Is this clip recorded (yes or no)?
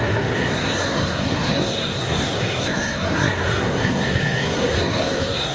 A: no